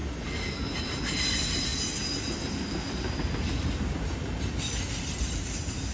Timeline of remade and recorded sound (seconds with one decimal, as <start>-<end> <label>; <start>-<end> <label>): 0.0-0.8 recorded; 0.8-1.7 remade; 1.7-5.2 recorded; 5.2-5.9 remade